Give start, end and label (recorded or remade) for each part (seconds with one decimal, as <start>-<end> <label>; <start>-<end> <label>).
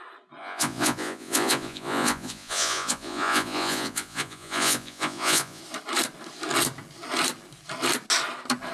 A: 0.0-0.4 recorded; 0.4-5.6 remade; 5.6-8.7 recorded